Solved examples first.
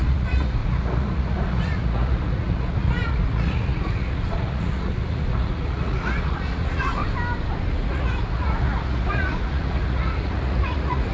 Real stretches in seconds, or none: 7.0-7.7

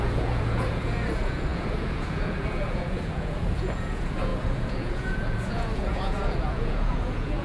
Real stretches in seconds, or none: none